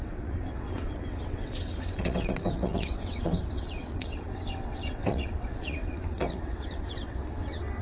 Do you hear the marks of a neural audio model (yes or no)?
yes